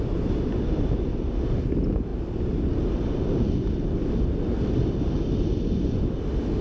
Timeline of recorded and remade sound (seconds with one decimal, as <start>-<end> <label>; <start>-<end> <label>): 0.0-6.6 recorded